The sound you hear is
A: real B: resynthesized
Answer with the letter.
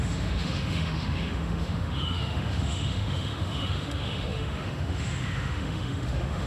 B